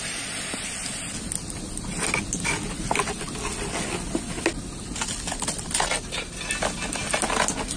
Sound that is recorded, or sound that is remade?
recorded